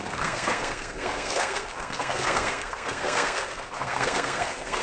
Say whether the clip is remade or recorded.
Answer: remade